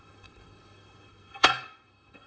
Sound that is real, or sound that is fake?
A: fake